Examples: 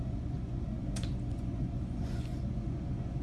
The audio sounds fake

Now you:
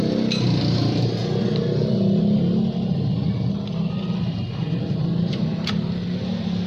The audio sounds real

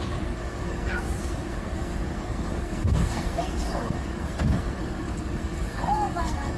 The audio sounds fake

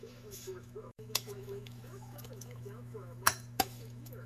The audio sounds fake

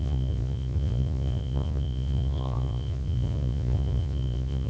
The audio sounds fake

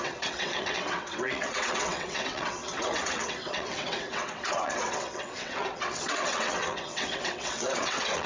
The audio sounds fake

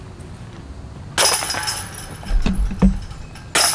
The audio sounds real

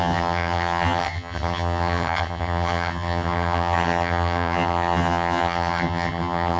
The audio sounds fake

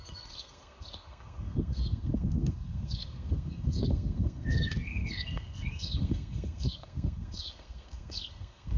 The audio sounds fake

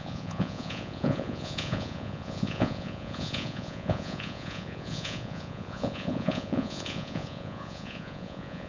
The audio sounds fake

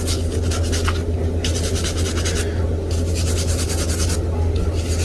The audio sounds real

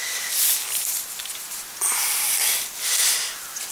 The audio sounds real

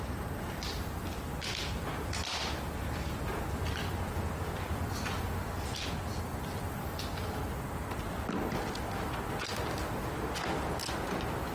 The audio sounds real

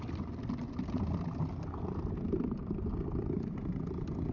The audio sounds real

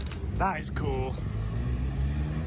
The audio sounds real